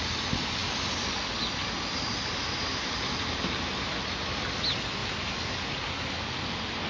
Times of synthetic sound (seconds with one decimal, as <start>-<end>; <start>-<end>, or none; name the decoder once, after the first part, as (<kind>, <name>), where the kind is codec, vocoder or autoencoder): none